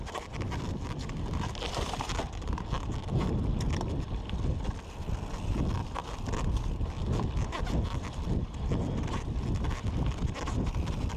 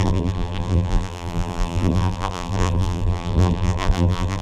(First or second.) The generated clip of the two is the second